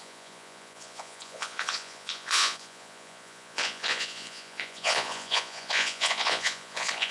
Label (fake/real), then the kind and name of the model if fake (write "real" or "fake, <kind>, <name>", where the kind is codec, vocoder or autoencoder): fake, vocoder, Vocos